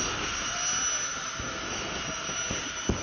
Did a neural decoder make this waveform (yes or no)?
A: no